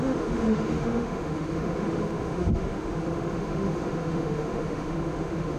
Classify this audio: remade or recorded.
remade